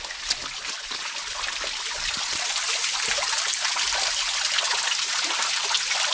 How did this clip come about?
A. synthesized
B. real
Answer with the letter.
B